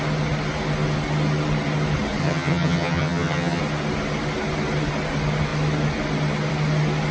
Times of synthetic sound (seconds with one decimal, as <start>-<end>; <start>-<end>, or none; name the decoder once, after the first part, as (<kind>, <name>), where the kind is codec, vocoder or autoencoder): 2.2-3.6 (vocoder, HiFi-GAN)